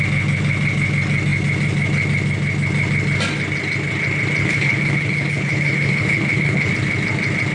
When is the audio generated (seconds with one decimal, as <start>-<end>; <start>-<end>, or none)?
4.4-6.7